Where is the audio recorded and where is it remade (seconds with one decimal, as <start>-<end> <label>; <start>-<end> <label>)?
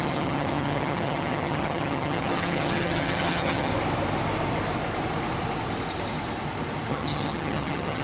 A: 0.0-3.7 remade; 3.7-6.9 recorded; 6.9-8.0 remade